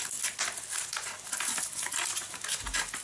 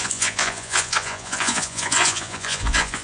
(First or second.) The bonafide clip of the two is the first